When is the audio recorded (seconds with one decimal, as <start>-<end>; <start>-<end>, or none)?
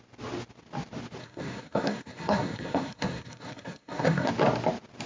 0.0-1.2; 4.3-5.1